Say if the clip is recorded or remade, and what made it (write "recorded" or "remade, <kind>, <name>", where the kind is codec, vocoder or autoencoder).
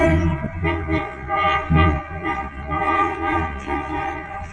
remade, vocoder, Vocos